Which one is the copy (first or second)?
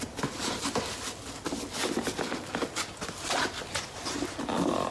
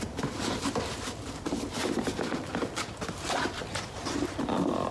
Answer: second